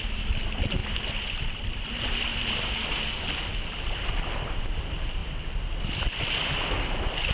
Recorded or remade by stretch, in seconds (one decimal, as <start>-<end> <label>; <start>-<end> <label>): 0.0-2.8 remade; 2.8-4.4 recorded; 4.4-5.2 remade; 5.2-7.3 recorded